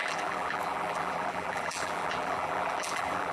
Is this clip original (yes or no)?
no